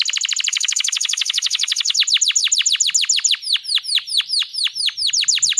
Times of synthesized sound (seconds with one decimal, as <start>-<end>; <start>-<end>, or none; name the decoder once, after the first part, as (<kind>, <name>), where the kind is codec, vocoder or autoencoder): 0.5-2.0 (autoencoder, DAC-VAE)